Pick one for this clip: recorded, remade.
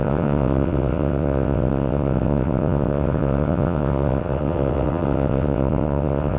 remade